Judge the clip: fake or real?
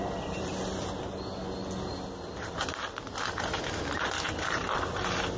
real